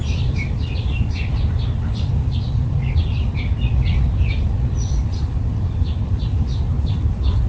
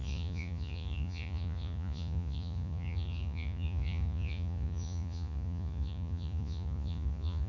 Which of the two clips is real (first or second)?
first